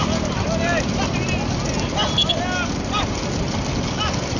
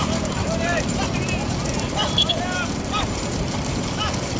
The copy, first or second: second